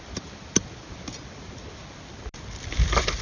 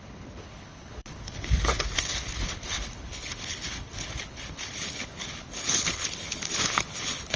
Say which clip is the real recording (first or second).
first